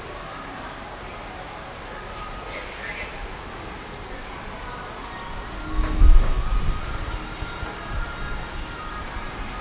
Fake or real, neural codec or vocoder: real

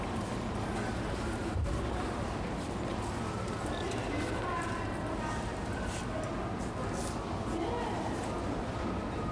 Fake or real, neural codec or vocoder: real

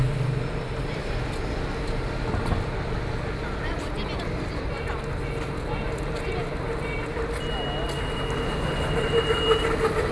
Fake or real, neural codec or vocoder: real